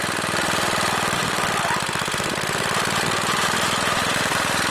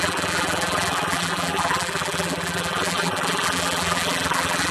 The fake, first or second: second